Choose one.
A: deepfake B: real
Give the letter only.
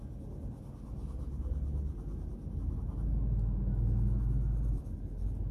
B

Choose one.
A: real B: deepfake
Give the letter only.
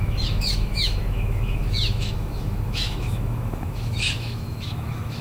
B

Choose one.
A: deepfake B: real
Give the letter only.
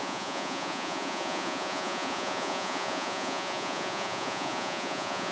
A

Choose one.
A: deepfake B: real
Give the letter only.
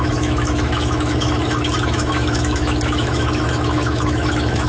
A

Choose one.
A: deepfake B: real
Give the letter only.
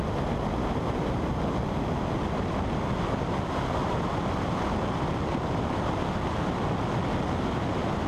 B